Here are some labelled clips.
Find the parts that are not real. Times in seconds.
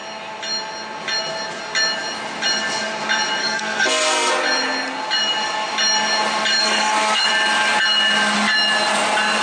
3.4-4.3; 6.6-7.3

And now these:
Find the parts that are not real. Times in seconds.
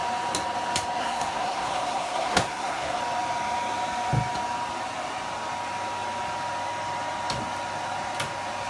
1.0-3.0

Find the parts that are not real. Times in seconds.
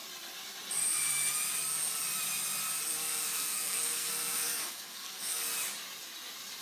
2.9-5.4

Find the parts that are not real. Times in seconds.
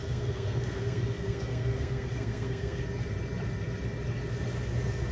0.0-2.8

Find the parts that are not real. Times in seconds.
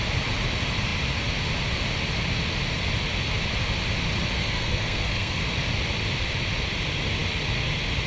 4.4-5.4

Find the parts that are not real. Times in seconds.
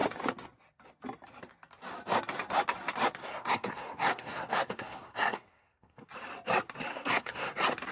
3.2-6.1; 6.9-7.5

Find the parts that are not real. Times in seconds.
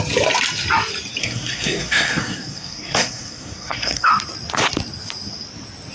1.2-4.1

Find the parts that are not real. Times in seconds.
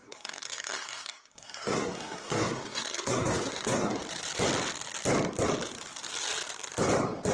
0.0-4.0